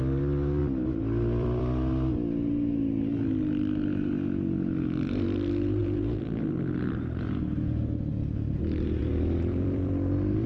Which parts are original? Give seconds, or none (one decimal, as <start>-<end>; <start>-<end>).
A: 0.0-0.6; 1.6-9.0